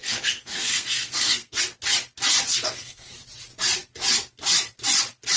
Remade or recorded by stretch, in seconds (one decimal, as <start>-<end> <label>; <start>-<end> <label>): 0.0-1.6 remade; 1.6-2.5 recorded; 2.5-3.1 remade; 3.1-5.4 recorded